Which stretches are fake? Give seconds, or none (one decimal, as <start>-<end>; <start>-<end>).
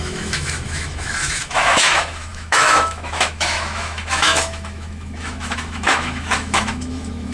0.0-7.3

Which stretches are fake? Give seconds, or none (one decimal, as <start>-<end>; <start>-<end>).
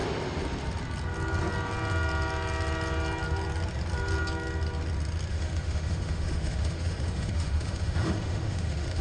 5.3-9.0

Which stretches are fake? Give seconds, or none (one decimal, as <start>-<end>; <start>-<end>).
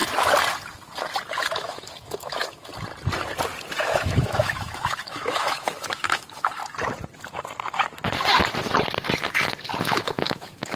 1.4-2.7; 3.8-6.6; 9.8-10.8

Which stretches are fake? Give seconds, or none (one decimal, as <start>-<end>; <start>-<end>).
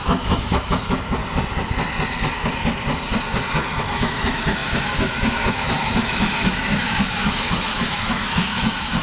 0.0-1.2; 3.8-9.0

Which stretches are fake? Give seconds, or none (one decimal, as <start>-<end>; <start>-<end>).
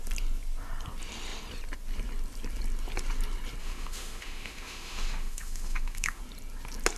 3.6-6.2